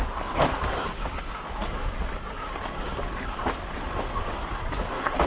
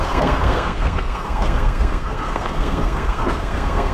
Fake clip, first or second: second